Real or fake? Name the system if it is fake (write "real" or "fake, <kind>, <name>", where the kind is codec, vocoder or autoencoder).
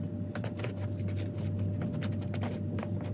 real